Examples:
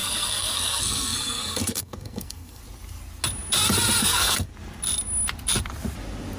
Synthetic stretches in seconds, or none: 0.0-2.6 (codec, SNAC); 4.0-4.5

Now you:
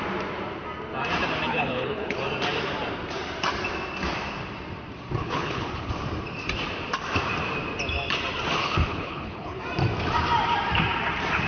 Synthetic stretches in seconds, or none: 1.5-2.2 (codec, HILCodec); 5.2-5.9; 8.6-9.6

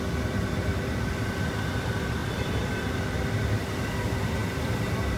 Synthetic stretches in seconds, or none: 2.2-3.8 (vocoder, BigVGAN v2); 4.4-5.2

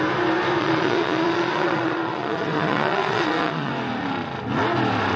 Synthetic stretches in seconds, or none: 0.6-3.7 (vocoder, Vocos)

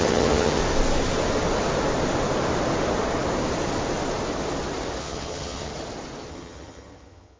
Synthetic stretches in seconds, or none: 0.0-0.6 (vocoder, HiFi-GAN); 5.0-5.7; 6.3-7.4

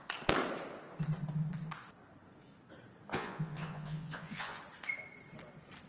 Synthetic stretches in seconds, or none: 3.1-4.6 (vocoder, Vocos)